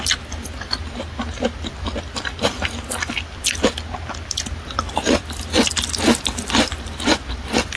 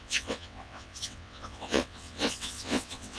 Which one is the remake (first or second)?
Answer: second